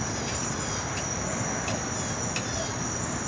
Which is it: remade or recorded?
recorded